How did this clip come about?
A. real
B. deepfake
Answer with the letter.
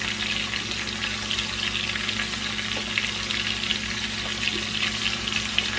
A